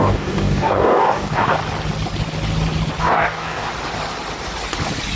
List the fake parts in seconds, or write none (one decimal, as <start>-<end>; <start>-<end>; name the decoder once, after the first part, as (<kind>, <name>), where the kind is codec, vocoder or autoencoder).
0.0-1.6 (codec, DAC); 3.0-3.7